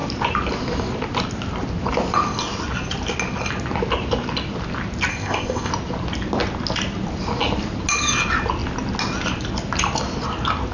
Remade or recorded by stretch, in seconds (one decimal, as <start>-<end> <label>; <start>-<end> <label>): 0.0-5.1 recorded; 5.1-5.7 remade; 5.7-10.7 recorded